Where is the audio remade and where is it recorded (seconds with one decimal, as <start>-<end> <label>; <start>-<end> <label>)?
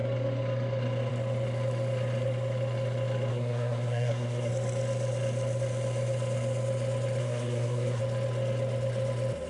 0.0-3.3 recorded; 3.3-4.5 remade; 4.5-7.2 recorded; 7.2-8.0 remade; 8.0-9.5 recorded